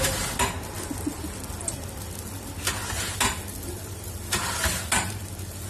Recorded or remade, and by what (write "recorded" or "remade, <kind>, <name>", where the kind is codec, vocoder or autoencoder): recorded